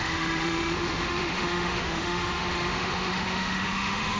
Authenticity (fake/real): fake